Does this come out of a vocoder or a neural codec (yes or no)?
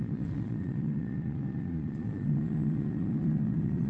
yes